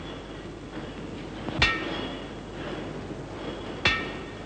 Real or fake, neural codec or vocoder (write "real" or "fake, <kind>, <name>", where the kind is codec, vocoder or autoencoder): real